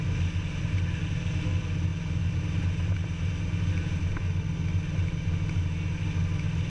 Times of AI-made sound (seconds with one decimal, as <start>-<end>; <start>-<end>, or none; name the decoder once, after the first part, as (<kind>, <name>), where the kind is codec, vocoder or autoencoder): none